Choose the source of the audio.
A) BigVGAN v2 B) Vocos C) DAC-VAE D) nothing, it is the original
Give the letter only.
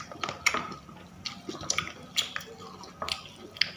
D